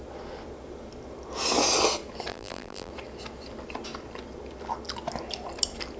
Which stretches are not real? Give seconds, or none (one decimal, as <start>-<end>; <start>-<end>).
2.3-2.9